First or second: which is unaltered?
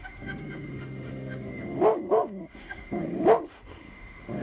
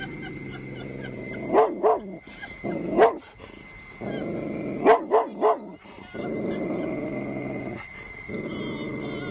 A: second